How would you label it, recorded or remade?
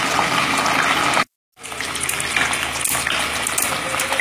recorded